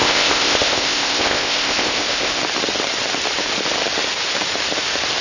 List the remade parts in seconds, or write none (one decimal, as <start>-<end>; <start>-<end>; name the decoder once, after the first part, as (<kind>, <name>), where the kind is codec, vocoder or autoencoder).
0.0-2.4 (codec, ZipCodec)